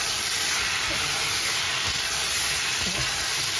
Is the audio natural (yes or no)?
yes